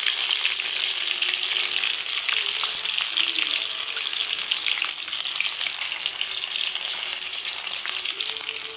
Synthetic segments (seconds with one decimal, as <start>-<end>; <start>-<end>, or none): 7.1-8.3